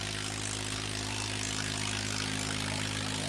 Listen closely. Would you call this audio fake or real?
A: real